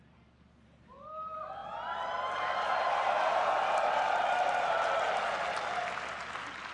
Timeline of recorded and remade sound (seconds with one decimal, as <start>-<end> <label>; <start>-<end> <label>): 0.0-1.6 recorded; 1.6-4.9 remade; 4.9-6.7 recorded